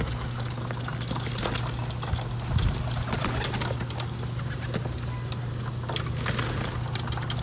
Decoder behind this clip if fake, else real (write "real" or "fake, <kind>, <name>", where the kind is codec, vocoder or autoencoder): real